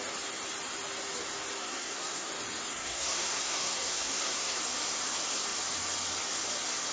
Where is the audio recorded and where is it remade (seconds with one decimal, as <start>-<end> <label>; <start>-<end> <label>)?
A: 0.0-1.6 recorded; 1.6-2.3 remade; 2.3-2.7 recorded; 2.7-4.6 remade; 4.6-6.9 recorded